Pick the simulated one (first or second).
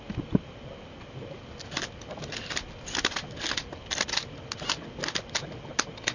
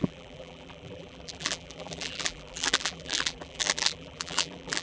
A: second